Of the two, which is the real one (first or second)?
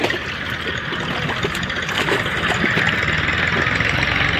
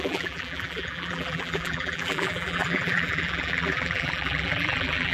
first